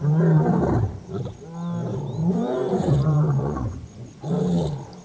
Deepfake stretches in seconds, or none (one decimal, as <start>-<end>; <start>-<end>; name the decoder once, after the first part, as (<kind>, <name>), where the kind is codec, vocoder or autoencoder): 2.2-4.3 (vocoder, Vocos)